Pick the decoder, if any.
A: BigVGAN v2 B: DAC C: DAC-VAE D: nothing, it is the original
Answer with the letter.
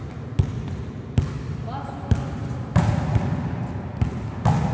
D